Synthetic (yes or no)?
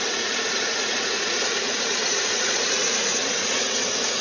yes